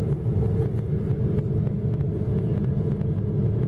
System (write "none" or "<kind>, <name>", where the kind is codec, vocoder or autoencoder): none